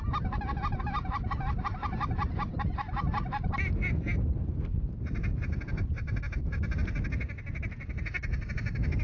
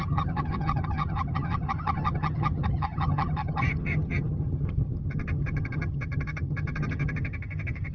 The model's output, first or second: second